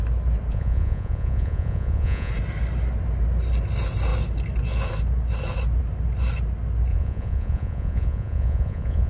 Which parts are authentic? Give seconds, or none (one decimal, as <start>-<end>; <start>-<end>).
0.0-0.5; 2.3-6.9